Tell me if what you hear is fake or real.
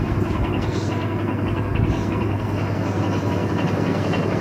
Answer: fake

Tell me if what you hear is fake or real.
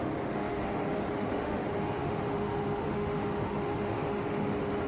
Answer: fake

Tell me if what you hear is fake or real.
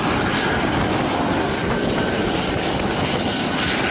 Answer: real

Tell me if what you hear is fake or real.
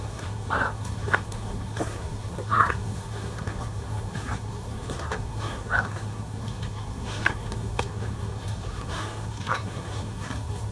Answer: fake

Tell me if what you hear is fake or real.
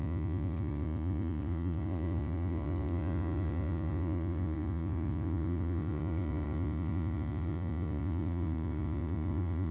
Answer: fake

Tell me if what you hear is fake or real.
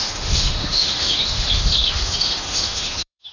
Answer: fake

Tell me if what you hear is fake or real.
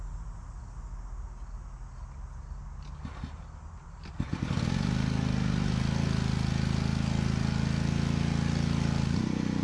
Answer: real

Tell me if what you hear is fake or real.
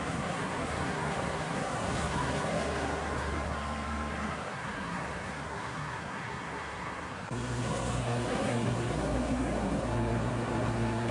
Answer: fake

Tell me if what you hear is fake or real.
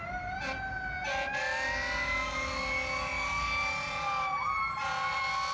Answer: real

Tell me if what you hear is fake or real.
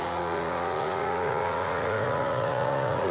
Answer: fake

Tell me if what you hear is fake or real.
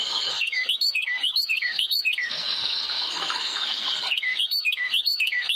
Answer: fake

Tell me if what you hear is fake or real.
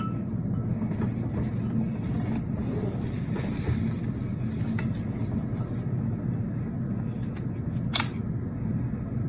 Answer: real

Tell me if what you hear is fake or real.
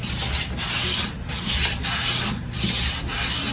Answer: real